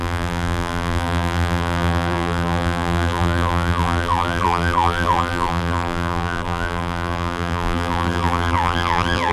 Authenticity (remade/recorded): remade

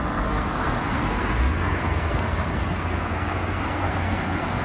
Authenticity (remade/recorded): remade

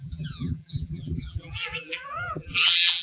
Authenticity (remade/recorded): remade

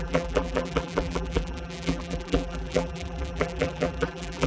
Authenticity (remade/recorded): remade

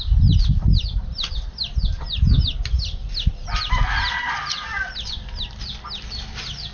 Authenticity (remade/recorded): recorded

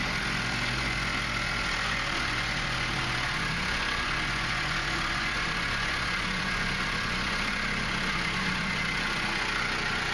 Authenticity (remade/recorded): remade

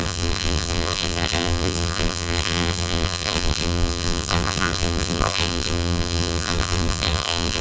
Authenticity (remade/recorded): remade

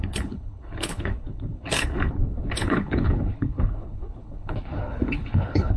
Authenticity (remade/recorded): remade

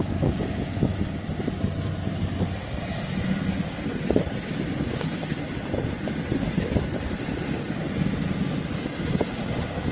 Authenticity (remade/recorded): recorded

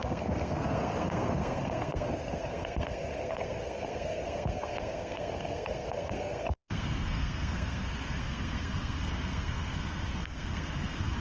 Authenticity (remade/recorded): remade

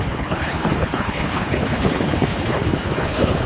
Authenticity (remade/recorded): remade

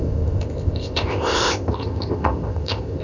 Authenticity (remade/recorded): remade